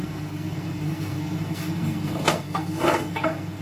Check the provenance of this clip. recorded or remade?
remade